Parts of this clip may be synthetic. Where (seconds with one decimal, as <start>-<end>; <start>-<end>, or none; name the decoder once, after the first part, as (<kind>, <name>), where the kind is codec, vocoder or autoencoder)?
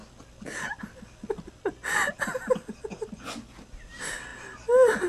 none